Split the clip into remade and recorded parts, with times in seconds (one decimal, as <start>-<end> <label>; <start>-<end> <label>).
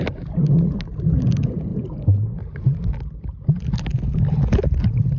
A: 0.0-5.2 recorded